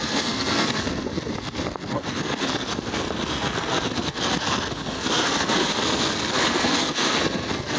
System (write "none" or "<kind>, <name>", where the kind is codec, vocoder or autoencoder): codec, SNAC